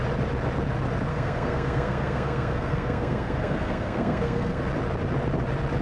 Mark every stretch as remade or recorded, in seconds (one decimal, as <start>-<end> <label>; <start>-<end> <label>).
0.0-1.1 recorded; 1.1-4.6 remade; 4.6-5.8 recorded